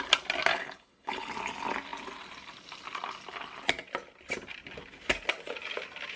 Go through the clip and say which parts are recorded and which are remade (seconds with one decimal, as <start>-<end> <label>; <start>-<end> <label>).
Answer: 0.0-0.5 recorded; 0.5-1.3 remade; 1.3-6.2 recorded